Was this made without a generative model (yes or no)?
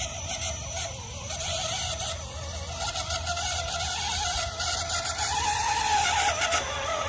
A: yes